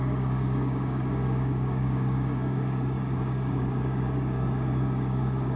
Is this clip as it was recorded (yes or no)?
no